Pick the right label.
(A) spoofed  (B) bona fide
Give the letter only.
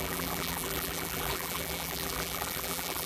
A